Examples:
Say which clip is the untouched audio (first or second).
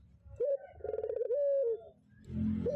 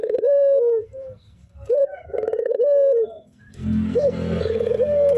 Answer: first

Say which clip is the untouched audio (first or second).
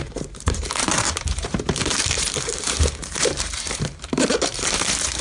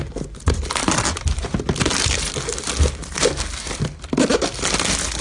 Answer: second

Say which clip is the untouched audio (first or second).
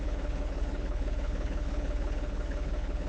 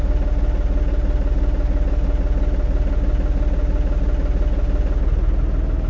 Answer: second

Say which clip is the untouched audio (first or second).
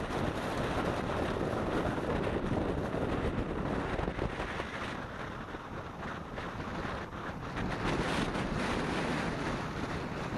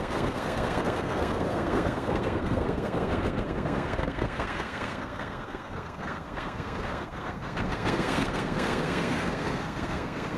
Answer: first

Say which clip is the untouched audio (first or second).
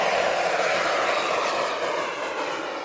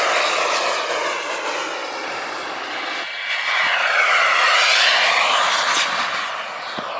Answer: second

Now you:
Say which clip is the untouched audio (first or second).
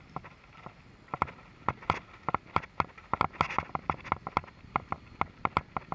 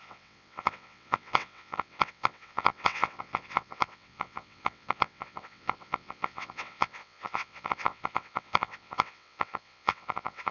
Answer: first